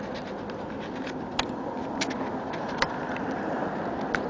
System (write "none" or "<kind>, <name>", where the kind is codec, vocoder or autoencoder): none